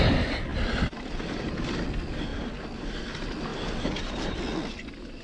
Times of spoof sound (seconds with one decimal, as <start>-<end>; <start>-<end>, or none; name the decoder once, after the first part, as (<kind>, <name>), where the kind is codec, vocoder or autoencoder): none